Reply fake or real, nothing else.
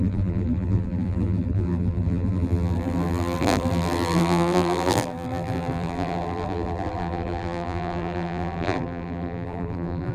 fake